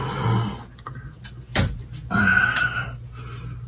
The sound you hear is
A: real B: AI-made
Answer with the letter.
A